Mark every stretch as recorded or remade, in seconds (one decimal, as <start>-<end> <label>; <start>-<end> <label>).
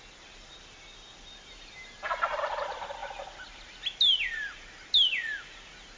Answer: 0.0-6.0 recorded